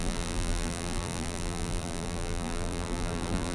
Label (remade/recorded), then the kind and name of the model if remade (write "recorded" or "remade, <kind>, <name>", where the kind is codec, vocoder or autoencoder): remade, vocoder, BigVGAN v2